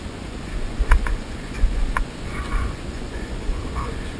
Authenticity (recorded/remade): remade